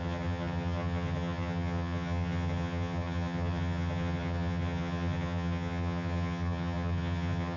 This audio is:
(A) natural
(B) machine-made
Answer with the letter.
B